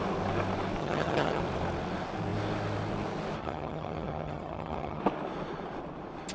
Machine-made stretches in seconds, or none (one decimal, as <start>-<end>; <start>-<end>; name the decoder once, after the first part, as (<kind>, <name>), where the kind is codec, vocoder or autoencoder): 0.8-1.4 (vocoder, HiFi-GAN); 3.4-5.0